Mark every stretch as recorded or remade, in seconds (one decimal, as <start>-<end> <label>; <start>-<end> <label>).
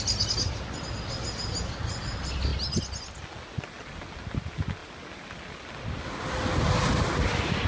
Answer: 0.0-7.7 recorded